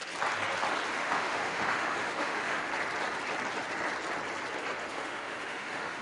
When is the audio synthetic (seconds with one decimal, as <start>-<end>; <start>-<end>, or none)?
1.0-2.7; 4.8-6.0